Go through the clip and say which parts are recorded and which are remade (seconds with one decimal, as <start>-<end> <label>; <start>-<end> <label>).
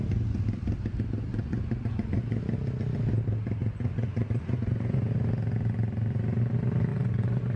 0.0-1.3 recorded; 1.3-2.4 remade; 2.4-3.6 recorded; 3.6-5.0 remade; 5.0-6.9 recorded; 6.9-7.6 remade